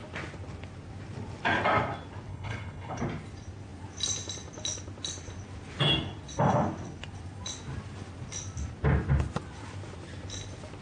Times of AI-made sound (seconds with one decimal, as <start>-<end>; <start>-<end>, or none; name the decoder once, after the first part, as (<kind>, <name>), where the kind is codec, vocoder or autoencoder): 2.3-3.0 (codec, HILCodec)